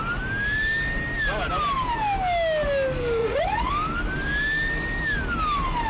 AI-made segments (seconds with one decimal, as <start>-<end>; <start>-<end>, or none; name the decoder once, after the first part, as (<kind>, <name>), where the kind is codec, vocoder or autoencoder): 3.2-3.7 (vocoder, Vocos)

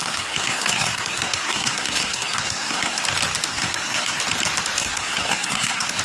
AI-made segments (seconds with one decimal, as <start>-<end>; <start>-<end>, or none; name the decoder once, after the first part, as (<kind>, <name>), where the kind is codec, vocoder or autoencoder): 0.0-3.0 (codec, SNAC); 3.5-4.2; 4.8-6.0

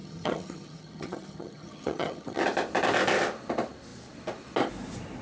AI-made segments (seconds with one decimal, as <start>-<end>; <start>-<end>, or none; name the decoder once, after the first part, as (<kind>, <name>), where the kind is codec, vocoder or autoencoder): 0.0-2.4 (vocoder, HiFi-GAN)

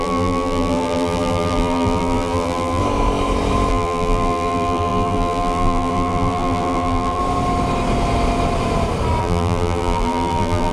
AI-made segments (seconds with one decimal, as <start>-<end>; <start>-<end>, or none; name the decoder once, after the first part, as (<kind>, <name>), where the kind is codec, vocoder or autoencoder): 0.0-2.8 (vocoder, BigVGAN v2); 3.7-7.2; 9.2-10.7

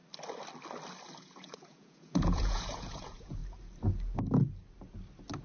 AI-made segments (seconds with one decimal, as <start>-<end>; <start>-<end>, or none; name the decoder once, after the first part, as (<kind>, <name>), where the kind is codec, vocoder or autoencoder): 1.2-3.4 (vocoder, Vocos)

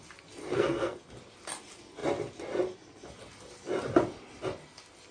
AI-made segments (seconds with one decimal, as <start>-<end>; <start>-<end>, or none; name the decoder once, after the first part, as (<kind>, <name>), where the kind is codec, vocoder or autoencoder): 0.4-1.0 (codec, SNAC)

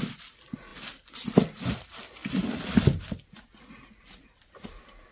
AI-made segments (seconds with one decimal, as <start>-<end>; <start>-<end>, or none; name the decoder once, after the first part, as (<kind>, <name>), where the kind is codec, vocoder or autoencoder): 0.0-2.2 (vocoder, BigVGAN v2); 4.0-5.1